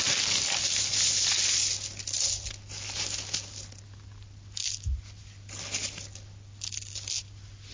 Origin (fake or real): real